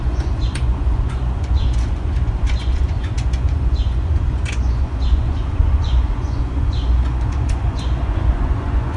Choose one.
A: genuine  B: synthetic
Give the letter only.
B